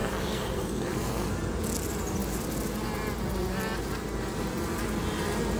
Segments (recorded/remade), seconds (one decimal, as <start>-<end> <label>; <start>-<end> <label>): 0.0-1.3 remade; 1.3-5.6 recorded